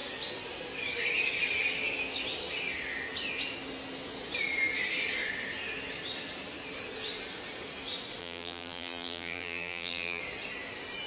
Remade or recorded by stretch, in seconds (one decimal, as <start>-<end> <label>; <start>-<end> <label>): 0.0-8.2 recorded; 8.2-10.2 remade; 10.2-11.1 recorded